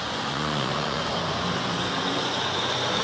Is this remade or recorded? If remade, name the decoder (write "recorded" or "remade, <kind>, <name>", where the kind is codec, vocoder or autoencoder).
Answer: remade, vocoder, Vocos